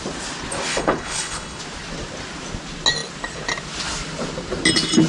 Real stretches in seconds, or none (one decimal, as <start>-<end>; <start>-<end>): 0.0-0.7; 1.6-5.1